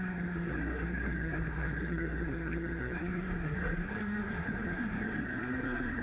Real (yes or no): no